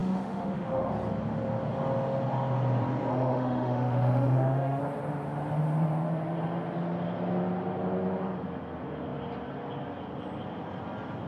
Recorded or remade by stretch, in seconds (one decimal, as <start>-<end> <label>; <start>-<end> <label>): 0.0-0.9 remade; 0.9-3.1 recorded; 3.1-4.8 remade; 4.8-11.3 recorded